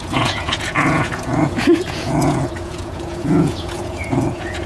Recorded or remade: remade